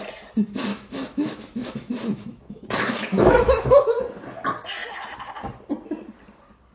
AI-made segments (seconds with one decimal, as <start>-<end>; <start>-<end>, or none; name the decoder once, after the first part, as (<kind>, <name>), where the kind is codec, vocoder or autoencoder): 0.7-4.0 (autoencoder, DAC-VAE)